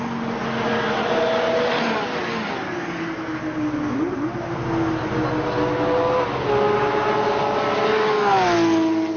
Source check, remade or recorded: recorded